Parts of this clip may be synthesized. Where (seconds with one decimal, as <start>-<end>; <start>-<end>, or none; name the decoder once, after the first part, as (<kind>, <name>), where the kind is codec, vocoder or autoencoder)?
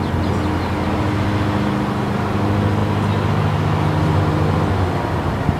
none